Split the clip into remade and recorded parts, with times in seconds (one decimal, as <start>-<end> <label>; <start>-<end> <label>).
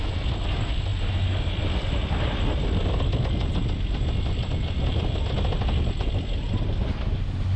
0.0-7.6 recorded